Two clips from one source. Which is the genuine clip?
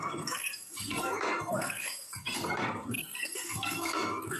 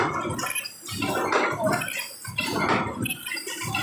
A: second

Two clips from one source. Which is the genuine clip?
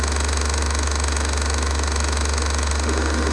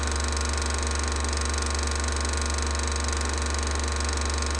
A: second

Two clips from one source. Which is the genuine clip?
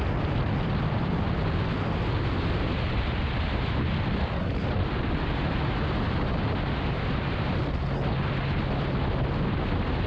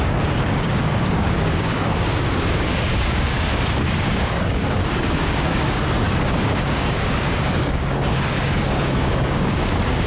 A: first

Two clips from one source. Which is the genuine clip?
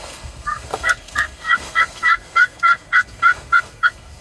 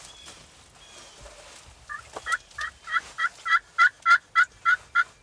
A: second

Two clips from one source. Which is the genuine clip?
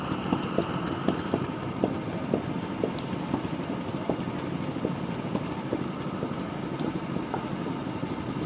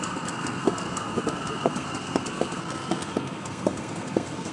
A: first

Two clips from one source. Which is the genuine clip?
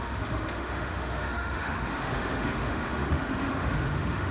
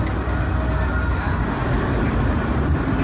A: second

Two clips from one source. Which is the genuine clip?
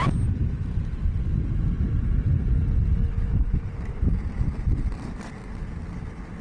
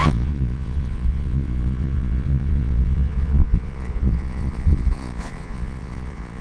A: first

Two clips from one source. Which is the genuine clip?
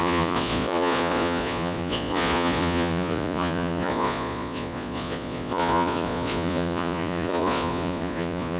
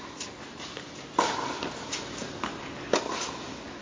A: second